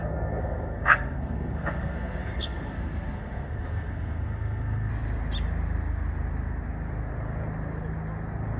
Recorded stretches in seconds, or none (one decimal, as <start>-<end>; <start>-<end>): 4.9-8.6